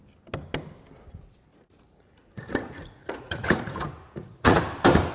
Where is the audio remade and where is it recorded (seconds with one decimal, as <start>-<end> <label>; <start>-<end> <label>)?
0.0-1.5 recorded; 1.5-4.6 remade; 4.6-5.1 recorded